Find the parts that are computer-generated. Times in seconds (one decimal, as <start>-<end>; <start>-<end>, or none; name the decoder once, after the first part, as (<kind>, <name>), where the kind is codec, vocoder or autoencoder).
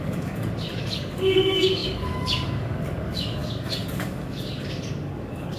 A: 0.0-5.6 (codec, DAC)